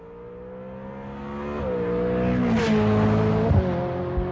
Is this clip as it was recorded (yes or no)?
yes